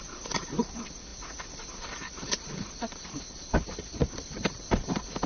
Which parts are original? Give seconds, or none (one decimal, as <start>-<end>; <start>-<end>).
none